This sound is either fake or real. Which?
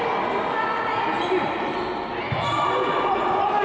real